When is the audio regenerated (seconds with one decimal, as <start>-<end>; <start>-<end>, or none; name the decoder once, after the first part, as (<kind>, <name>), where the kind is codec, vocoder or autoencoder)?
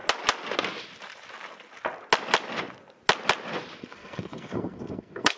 3.8-5.4 (codec, SNAC)